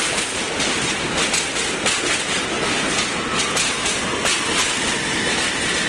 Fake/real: real